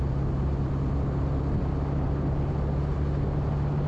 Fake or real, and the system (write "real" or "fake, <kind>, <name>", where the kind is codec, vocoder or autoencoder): real